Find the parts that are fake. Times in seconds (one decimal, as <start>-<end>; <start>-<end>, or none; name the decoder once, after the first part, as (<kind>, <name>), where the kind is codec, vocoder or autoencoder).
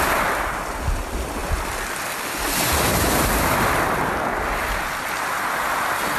none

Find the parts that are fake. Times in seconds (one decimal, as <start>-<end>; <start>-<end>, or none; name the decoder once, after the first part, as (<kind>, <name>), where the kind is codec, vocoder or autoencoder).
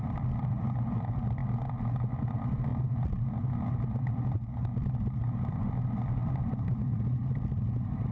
6.7-7.3 (vocoder, BigVGAN v2)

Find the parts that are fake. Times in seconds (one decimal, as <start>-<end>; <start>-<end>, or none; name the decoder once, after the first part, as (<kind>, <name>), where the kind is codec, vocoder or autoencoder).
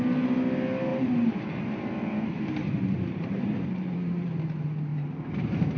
0.9-4.4 (vocoder, BigVGAN v2); 4.9-5.8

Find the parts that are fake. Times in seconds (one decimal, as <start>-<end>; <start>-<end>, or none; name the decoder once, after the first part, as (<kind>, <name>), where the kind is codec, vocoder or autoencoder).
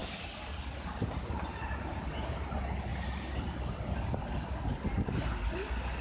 none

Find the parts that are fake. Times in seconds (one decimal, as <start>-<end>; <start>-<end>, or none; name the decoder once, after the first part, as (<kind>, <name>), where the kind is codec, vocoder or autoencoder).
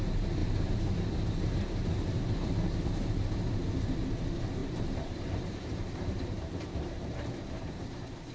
0.4-0.9 (vocoder, BigVGAN v2); 4.6-7.7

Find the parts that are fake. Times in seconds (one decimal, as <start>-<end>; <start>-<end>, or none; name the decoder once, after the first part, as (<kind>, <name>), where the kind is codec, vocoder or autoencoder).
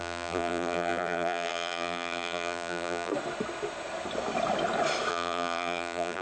0.0-3.1 (vocoder, BigVGAN v2); 5.1-6.2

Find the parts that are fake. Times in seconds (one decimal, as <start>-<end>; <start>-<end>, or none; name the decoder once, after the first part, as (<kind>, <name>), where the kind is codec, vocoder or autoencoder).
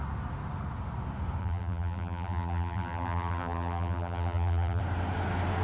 1.4-4.8 (vocoder, BigVGAN v2)